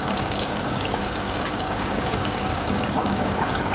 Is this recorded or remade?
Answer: remade